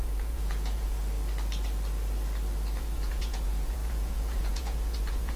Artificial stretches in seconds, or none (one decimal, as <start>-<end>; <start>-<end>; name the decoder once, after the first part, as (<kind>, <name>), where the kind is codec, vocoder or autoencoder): 0.0-1.0 (vocoder, Vocos); 2.8-5.4